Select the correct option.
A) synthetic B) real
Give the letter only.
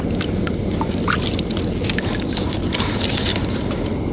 B